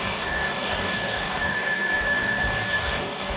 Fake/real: fake